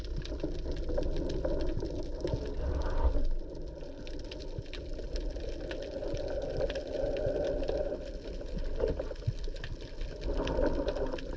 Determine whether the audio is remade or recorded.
recorded